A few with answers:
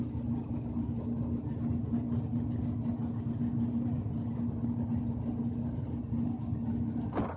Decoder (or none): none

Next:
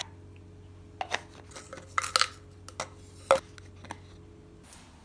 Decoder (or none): none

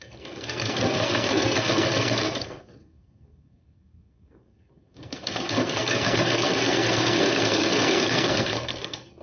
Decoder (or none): codec, SNAC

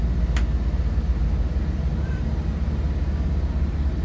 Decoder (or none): none